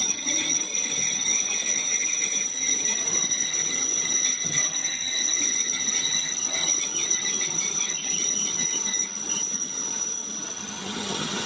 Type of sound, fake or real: fake